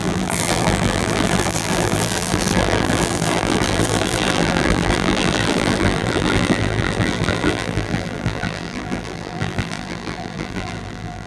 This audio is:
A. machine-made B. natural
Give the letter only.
A